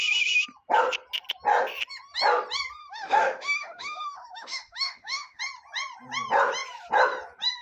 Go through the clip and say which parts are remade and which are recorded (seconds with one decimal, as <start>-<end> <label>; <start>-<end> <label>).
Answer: 0.0-2.8 recorded; 2.8-5.4 remade; 5.4-7.6 recorded